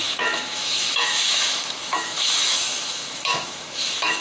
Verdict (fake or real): fake